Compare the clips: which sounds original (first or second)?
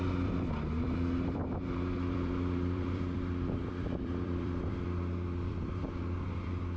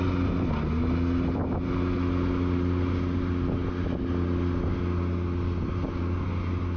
second